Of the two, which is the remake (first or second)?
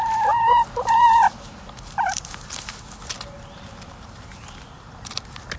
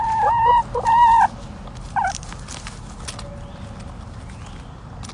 first